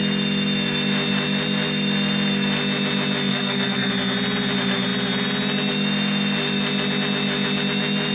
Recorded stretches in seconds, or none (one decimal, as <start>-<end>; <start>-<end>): 0.0-3.3; 3.9-8.1